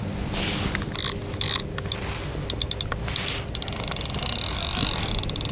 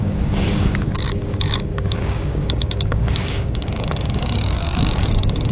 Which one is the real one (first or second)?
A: first